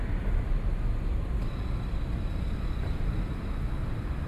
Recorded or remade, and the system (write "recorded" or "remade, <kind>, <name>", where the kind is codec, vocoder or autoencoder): recorded